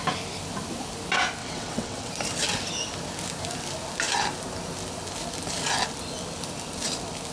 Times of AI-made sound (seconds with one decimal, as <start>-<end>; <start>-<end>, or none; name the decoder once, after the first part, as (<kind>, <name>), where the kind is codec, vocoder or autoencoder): 1.4-2.1 (vocoder, WaveNeXt)